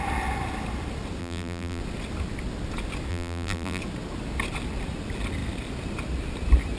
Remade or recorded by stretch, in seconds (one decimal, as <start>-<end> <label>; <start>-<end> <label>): 0.0-1.2 recorded; 1.2-1.8 remade; 1.8-3.1 recorded; 3.1-3.8 remade; 3.8-6.8 recorded